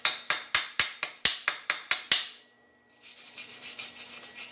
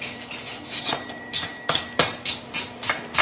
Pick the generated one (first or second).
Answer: second